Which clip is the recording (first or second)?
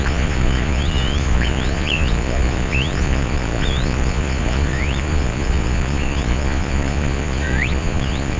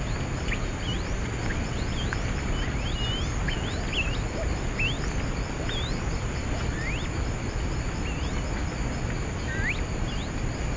second